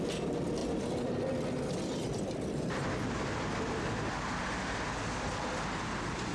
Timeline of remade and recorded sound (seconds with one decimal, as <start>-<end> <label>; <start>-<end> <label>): 0.0-6.3 recorded